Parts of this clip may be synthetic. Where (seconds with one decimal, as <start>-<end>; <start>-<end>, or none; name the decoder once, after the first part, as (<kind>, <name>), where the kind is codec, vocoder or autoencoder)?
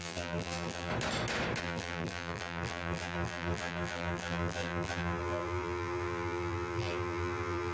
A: 0.0-0.9 (vocoder, BigVGAN v2); 1.6-7.7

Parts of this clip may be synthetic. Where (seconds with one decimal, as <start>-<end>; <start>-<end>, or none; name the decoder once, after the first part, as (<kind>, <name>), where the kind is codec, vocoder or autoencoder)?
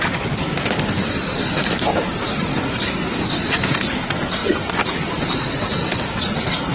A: 0.0-6.7 (vocoder, BigVGAN v2)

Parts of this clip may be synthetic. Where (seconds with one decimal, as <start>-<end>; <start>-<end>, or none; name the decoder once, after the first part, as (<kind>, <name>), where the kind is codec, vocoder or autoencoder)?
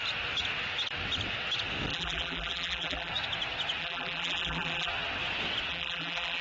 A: 1.9-3.1 (vocoder, BigVGAN v2); 3.8-4.9; 5.7-6.4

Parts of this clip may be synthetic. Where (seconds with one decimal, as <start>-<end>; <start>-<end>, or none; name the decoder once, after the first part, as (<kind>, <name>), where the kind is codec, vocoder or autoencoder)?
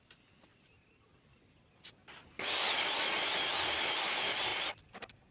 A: 0.5-2.7 (vocoder, BigVGAN v2)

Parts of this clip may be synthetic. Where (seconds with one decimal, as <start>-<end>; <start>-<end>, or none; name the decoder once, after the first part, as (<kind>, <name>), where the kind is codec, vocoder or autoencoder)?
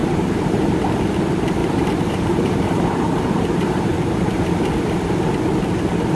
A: 0.0-0.7 (vocoder, BigVGAN v2); 1.6-4.4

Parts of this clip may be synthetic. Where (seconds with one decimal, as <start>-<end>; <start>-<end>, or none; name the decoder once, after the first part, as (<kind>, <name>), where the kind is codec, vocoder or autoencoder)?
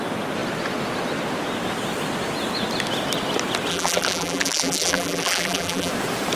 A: 3.7-5.9 (vocoder, BigVGAN v2)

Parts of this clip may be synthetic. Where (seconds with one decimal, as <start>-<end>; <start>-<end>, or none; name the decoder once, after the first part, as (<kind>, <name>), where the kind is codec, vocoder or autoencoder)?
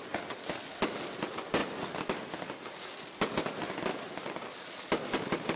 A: 0.0-1.6 (vocoder, BigVGAN v2); 4.8-5.6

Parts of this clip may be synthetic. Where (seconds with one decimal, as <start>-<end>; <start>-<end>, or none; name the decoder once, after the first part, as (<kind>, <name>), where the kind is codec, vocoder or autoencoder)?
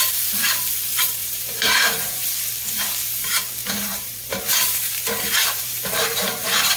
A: 1.2-2.2 (vocoder, BigVGAN v2); 3.6-6.8